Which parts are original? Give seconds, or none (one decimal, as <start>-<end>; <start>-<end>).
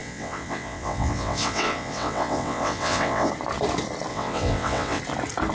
3.3-4.1; 5.0-5.5